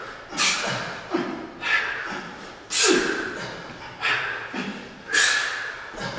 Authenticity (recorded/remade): recorded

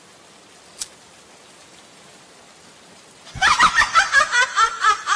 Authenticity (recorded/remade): recorded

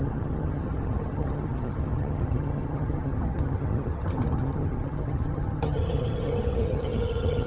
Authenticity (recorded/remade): remade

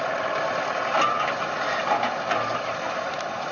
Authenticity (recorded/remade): recorded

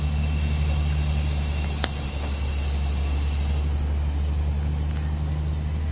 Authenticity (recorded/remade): recorded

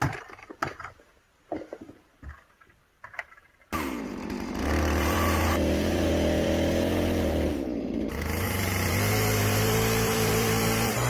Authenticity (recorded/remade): remade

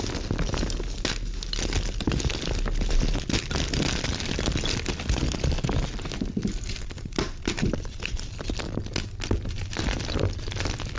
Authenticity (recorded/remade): recorded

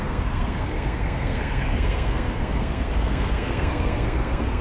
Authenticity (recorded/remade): remade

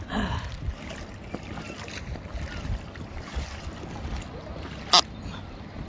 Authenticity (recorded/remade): recorded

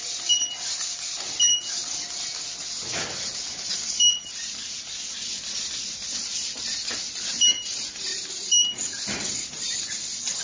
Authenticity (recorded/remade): recorded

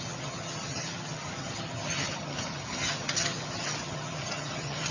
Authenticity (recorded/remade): remade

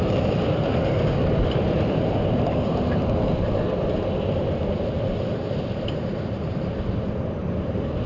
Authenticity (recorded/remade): recorded